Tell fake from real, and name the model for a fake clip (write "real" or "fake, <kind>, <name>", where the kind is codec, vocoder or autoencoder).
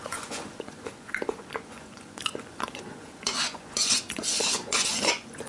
fake, vocoder, Vocos